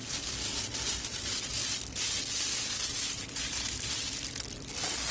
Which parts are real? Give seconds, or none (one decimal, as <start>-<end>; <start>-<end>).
0.0-5.1